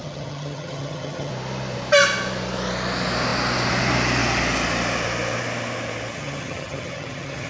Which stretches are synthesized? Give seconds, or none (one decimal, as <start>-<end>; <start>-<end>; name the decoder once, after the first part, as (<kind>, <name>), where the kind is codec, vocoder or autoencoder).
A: 0.0-1.3 (vocoder, HiFi-GAN); 6.1-7.5

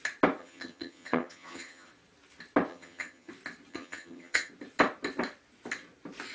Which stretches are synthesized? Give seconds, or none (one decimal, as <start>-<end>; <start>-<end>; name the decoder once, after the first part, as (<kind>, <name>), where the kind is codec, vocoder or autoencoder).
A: 0.4-1.9 (vocoder, HiFi-GAN); 2.7-3.3; 3.7-4.5